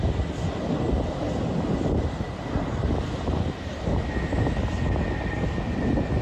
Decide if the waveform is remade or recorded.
recorded